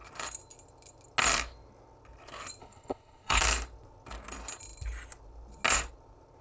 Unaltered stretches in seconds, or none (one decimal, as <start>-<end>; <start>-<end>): 0.0-2.6; 3.4-6.4